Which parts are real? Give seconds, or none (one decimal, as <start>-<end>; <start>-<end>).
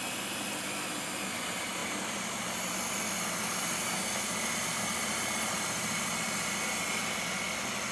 0.0-7.9